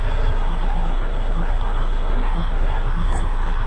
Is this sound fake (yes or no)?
yes